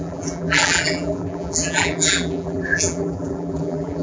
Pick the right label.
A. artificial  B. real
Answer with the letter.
A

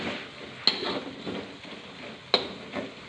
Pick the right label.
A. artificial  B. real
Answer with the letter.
B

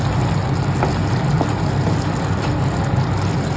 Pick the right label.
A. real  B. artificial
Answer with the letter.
A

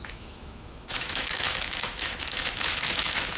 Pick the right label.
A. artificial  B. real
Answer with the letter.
A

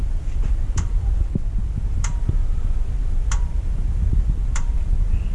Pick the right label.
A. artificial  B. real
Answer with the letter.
A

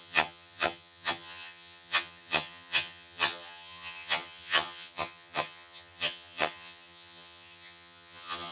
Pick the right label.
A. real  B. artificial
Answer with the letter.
B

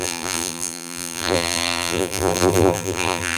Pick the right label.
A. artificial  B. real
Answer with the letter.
A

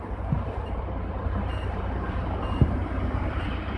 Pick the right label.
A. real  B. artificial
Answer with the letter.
B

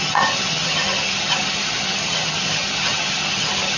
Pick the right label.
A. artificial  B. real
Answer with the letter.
A